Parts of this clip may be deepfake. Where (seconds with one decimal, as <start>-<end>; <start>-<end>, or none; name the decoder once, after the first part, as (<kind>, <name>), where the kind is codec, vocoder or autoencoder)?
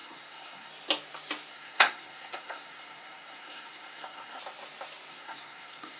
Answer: 0.0-0.7 (codec, SNAC); 1.5-4.4; 5.1-6.0